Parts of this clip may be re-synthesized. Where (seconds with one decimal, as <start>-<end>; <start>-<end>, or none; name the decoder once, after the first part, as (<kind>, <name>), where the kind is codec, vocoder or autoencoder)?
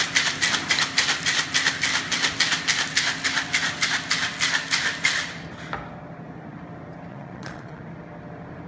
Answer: 7.1-7.8 (vocoder, Vocos)